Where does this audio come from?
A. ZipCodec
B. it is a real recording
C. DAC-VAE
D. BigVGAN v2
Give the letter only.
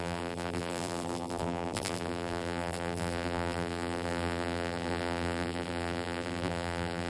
D